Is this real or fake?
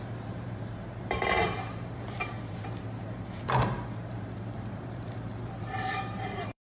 fake